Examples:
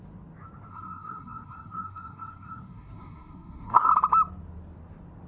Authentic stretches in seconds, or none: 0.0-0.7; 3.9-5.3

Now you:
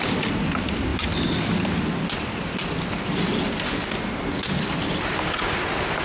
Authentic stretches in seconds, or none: 0.0-6.0

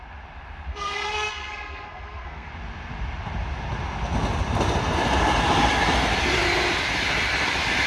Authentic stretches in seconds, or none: 0.0-0.7; 2.5-7.9

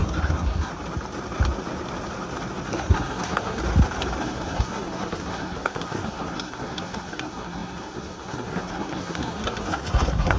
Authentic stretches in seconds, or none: 0.7-2.7; 3.6-4.2

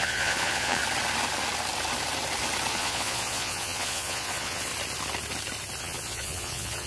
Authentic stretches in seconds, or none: 0.8-2.7; 4.7-5.8